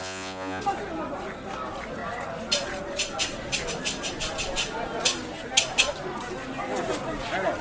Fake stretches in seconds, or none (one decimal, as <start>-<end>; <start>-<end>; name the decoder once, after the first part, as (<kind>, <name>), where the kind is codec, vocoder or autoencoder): 0.0-0.6 (vocoder, Vocos)